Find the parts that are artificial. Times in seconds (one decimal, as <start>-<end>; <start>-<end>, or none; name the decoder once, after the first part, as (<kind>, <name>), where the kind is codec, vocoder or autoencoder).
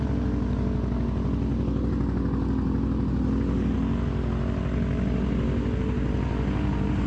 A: none